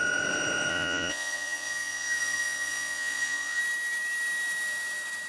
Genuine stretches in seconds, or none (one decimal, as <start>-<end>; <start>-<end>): 0.0-0.7; 3.6-5.3